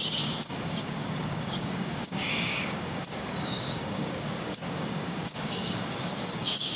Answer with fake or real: fake